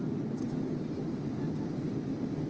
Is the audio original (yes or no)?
yes